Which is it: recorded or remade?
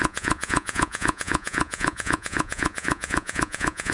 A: remade